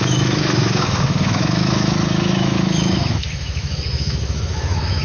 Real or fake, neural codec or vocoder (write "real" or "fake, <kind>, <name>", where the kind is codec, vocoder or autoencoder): fake, autoencoder, DAC-VAE